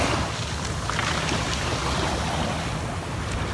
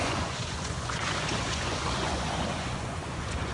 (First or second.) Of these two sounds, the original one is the first